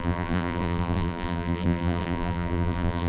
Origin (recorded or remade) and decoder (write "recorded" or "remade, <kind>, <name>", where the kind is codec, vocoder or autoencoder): remade, vocoder, BigVGAN v2